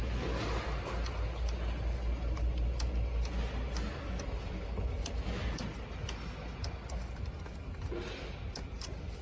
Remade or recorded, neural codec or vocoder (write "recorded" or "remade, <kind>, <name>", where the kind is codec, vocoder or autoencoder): recorded